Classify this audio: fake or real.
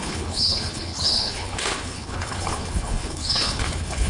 fake